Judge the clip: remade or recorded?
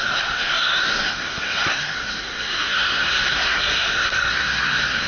remade